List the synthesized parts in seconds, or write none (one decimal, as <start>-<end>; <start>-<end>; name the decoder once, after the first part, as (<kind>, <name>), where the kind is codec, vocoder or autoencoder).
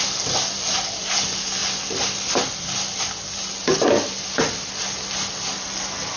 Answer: none